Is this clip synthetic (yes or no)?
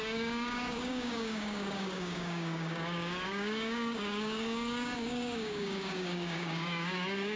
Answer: yes